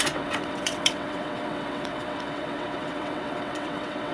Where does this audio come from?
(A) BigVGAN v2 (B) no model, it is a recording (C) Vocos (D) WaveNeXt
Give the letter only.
D